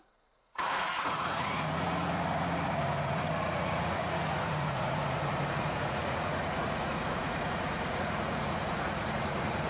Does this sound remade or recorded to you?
remade